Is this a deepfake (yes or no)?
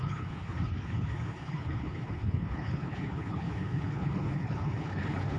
yes